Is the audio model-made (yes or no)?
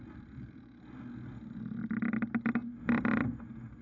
no